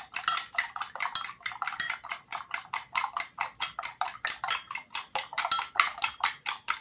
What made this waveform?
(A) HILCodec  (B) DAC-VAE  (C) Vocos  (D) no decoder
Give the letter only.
D